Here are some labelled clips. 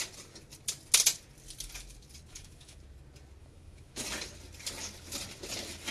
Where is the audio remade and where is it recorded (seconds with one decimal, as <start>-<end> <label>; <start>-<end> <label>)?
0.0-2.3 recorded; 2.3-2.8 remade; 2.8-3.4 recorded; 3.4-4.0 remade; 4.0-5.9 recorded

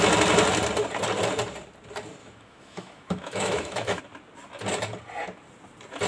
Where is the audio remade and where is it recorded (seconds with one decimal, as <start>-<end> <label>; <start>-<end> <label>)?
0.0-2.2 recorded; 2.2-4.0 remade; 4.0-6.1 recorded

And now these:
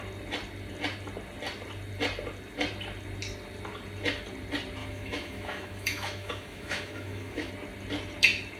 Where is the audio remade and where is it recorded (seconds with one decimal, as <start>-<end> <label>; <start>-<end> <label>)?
0.0-4.8 recorded; 4.8-7.5 remade; 7.5-8.6 recorded

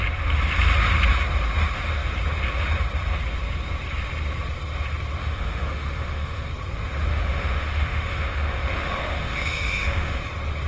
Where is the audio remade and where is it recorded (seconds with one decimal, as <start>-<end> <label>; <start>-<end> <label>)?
0.0-5.2 recorded; 5.2-6.5 remade; 6.5-7.1 recorded; 7.1-10.2 remade; 10.2-10.7 recorded

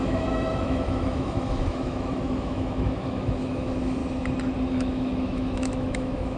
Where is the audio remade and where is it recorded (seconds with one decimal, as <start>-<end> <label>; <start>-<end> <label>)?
0.0-4.0 remade; 4.0-4.7 recorded; 4.7-6.4 remade

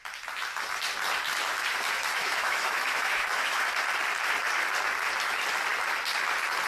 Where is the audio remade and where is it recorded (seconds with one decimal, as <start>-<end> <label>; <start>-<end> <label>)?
0.0-2.2 recorded; 2.2-3.6 remade; 3.6-6.7 recorded

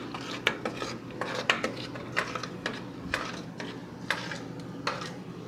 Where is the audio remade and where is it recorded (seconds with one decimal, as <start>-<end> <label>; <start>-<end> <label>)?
0.0-5.5 recorded

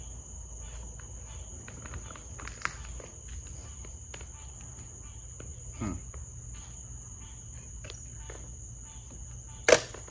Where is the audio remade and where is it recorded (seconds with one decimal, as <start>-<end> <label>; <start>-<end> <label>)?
0.0-10.1 recorded